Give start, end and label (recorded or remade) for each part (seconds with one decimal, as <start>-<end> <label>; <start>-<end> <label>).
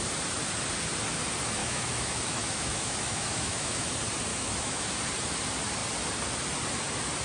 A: 0.0-1.6 recorded; 1.6-3.9 remade; 3.9-4.3 recorded; 4.3-4.9 remade; 4.9-7.2 recorded